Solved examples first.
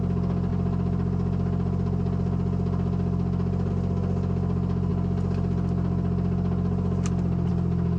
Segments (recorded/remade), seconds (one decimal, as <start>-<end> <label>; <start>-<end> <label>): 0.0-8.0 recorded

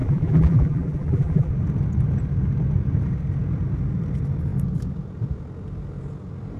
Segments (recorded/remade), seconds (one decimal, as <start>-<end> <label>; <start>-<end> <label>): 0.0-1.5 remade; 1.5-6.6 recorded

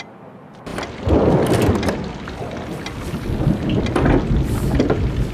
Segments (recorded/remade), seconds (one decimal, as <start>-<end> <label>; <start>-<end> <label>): 0.0-5.3 recorded

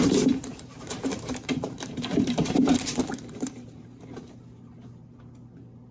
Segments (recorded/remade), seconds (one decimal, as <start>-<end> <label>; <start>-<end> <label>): 0.0-0.5 recorded; 0.5-4.0 remade; 4.0-5.9 recorded

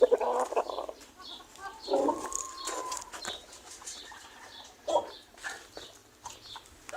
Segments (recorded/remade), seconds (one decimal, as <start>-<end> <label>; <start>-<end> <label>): 0.0-1.6 recorded; 1.6-4.2 remade; 4.2-7.0 recorded

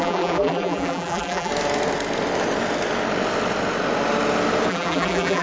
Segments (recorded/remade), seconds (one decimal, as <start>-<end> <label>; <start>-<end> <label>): 0.0-1.5 remade; 1.5-4.7 recorded; 4.7-5.4 remade

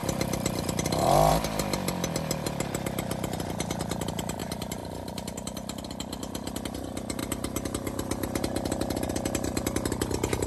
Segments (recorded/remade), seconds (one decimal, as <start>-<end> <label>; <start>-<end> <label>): 0.0-1.3 remade; 1.3-4.4 recorded; 4.4-6.2 remade; 6.2-10.5 recorded

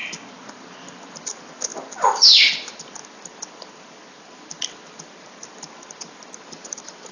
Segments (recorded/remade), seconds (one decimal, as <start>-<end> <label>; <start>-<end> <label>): 0.0-7.1 recorded